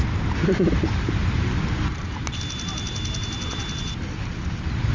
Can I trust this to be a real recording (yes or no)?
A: yes